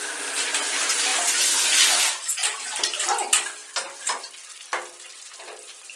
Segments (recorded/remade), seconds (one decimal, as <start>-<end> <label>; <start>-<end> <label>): 0.0-2.4 recorded; 2.4-3.0 remade; 3.0-6.0 recorded